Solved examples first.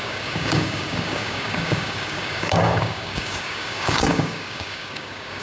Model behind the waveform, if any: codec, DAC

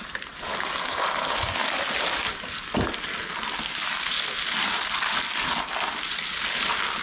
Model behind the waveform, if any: none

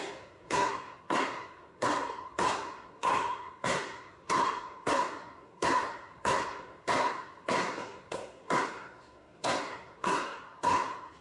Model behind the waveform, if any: codec, SNAC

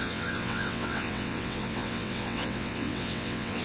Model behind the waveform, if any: vocoder, WaveNeXt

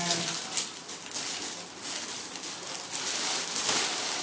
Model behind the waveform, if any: none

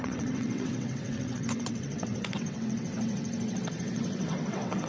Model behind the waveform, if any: vocoder, WaveNeXt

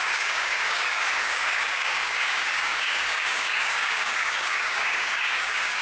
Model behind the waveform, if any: codec, DAC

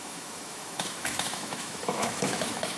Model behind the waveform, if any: autoencoder, DAC-VAE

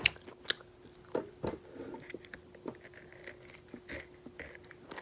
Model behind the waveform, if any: none